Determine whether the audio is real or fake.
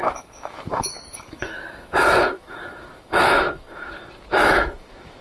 fake